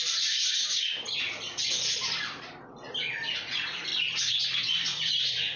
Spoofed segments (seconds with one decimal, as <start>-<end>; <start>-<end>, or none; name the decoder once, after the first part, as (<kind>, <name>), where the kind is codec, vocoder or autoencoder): 3.4-3.9 (vocoder, Vocos); 4.6-5.6